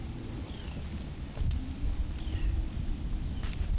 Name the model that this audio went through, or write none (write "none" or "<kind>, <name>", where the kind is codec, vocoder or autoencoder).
none